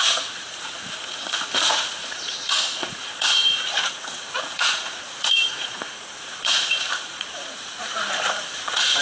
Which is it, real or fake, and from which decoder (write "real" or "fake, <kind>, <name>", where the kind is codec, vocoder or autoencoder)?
fake, vocoder, Vocos